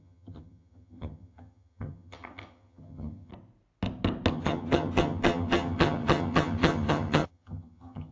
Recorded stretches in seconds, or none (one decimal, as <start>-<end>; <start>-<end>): 3.3-4.3